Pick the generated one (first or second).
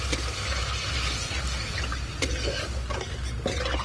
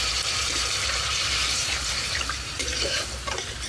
second